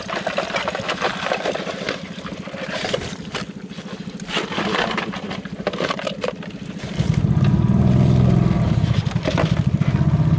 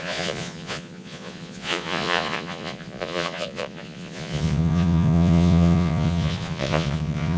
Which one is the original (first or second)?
first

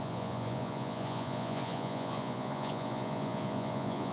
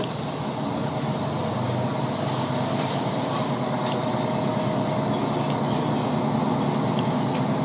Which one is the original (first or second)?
second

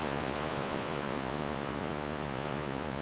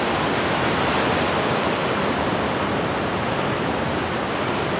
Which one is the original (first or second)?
second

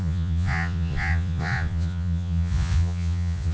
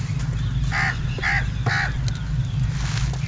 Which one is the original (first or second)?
second